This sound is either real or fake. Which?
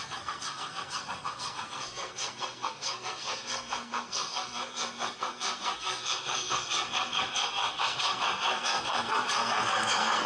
fake